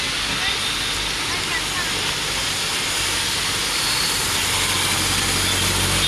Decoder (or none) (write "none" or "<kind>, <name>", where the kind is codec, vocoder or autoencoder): none